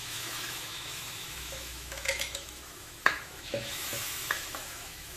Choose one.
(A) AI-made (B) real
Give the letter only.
A